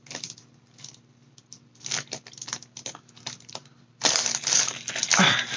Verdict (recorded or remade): recorded